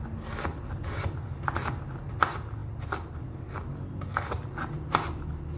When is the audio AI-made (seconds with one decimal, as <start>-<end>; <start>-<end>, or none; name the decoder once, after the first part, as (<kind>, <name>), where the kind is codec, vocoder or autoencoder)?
none